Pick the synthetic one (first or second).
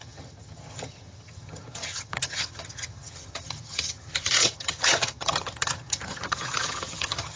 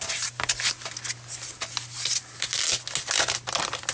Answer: first